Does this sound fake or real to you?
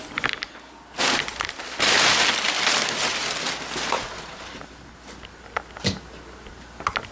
real